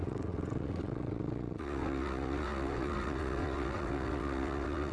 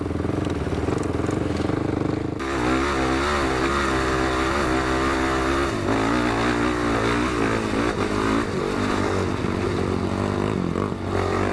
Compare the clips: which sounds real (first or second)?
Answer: second